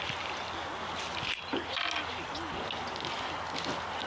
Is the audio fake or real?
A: real